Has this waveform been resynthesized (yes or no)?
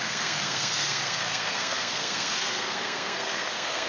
yes